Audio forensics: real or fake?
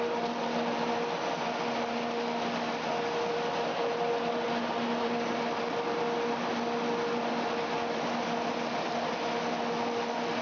real